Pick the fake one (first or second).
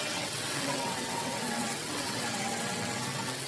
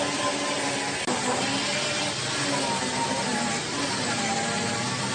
first